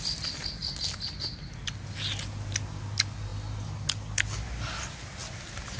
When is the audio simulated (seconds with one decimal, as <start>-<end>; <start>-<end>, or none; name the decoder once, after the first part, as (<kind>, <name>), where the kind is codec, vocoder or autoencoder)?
none